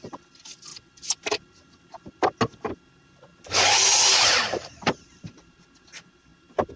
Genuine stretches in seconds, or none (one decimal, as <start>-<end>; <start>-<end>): 0.0-3.3; 5.6-6.8